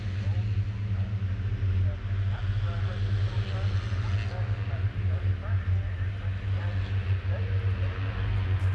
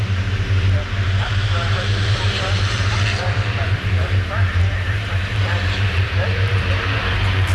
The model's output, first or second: second